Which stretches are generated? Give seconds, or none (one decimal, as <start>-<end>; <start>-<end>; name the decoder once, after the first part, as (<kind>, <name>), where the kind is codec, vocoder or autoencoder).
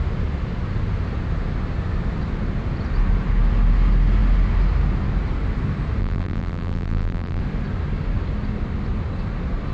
6.0-7.4 (vocoder, BigVGAN v2)